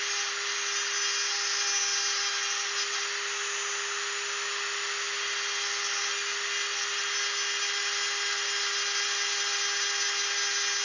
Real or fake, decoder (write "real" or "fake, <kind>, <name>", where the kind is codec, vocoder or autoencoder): real